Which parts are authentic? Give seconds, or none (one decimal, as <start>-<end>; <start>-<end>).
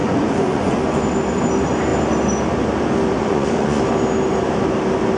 0.8-3.2; 3.8-5.2